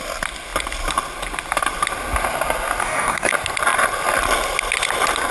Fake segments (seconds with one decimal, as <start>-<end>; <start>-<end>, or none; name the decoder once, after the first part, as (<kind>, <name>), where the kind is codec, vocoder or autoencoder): 2.8-3.3 (codec, DAC)